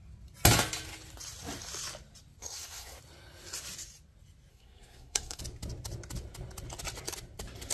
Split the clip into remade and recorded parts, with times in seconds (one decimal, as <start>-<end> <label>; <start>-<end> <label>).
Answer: 0.0-2.4 recorded; 2.4-3.0 remade; 3.0-4.5 recorded; 4.5-5.4 remade; 5.4-7.7 recorded